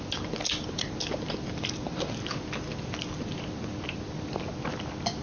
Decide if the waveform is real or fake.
real